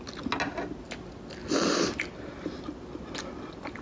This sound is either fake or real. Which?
real